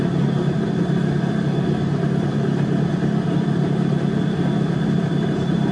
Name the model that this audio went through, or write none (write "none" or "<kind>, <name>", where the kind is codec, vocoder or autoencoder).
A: none